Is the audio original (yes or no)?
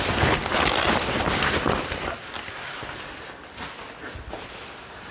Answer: yes